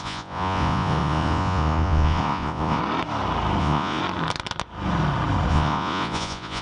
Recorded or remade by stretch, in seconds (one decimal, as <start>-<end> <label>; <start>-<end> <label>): 0.0-2.8 remade; 2.8-3.6 recorded; 3.6-4.0 remade; 4.0-5.5 recorded; 5.5-6.6 remade